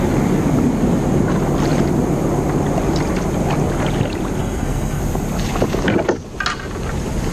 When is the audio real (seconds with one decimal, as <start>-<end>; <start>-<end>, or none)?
0.0-4.4; 5.0-7.3